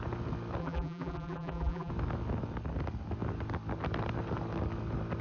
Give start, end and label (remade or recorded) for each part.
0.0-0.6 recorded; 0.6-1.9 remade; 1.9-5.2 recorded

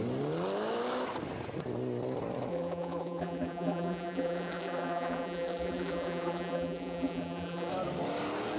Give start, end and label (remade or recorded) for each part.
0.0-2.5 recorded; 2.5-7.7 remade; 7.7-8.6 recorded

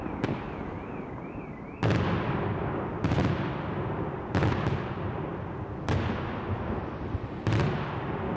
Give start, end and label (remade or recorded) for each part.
0.0-8.4 recorded

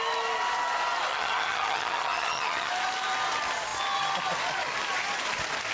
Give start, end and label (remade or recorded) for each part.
0.0-1.1 recorded; 1.1-2.7 remade; 2.7-5.7 recorded

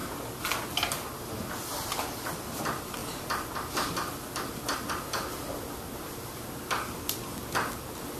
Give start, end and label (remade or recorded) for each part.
0.0-8.2 recorded

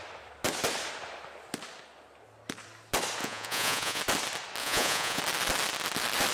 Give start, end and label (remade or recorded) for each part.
0.0-3.2 recorded; 3.2-4.0 remade; 4.0-4.6 recorded; 4.6-5.2 remade; 5.2-6.3 recorded